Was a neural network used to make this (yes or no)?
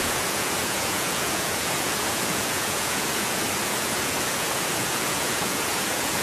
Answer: yes